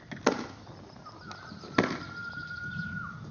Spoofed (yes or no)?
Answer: no